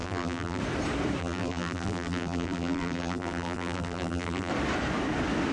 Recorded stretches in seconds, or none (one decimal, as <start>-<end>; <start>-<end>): 0.6-1.2; 4.5-5.5

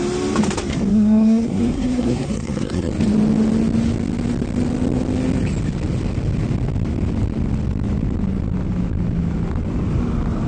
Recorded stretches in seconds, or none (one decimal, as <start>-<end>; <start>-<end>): 0.0-0.9; 2.9-10.5

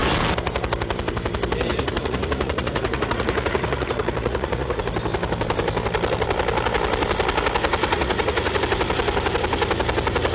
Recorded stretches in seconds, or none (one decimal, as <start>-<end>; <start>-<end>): 0.0-1.7; 4.8-7.8; 8.6-10.3

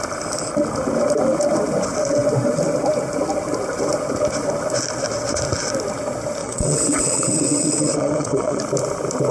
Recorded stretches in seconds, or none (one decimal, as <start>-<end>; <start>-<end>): 0.0-6.4; 8.6-9.3

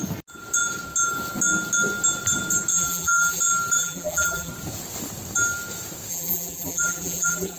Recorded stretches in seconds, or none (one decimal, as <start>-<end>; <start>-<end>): 0.0-2.7; 3.4-3.8; 4.5-6.1

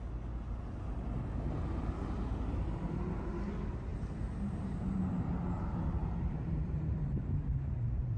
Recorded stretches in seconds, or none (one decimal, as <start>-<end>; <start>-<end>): 0.0-6.0